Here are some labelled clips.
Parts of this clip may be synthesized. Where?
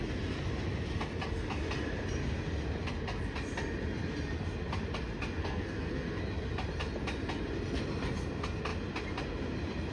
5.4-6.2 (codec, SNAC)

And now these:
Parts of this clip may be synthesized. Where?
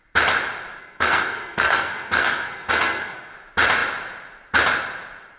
0.8-3.3 (codec, SNAC)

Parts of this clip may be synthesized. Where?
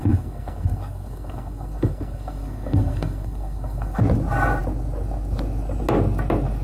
0.0-4.0 (codec, SNAC)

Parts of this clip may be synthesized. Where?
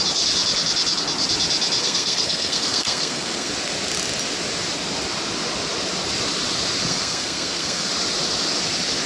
1.8-3.5 (codec, SNAC); 6.8-7.9